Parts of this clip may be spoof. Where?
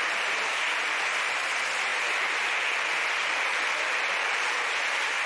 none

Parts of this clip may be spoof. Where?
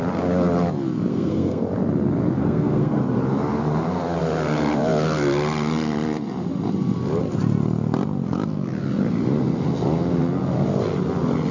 1.1-1.6 (codec, SNAC); 2.4-3.0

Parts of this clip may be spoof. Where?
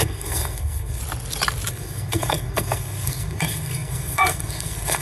0.0-1.0 (codec, SNAC); 1.7-5.0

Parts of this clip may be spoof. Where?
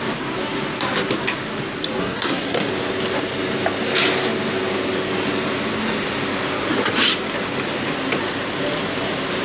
2.0-2.7 (codec, SNAC)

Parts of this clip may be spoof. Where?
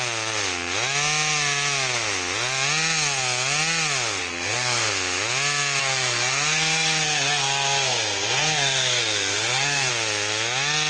4.2-4.9 (codec, SNAC); 5.8-9.9